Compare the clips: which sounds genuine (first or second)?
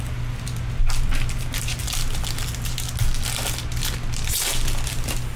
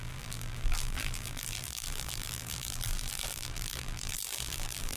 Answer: first